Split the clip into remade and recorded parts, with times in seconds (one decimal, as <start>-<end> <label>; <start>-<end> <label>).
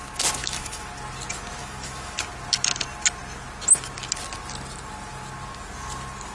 0.0-0.4 recorded; 0.4-0.9 remade; 0.9-1.6 recorded; 1.6-2.2 remade; 2.2-6.3 recorded